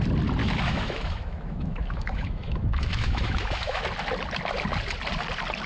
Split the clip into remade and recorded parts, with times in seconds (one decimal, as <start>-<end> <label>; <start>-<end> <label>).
0.0-0.4 recorded; 0.4-3.8 remade; 3.8-5.7 recorded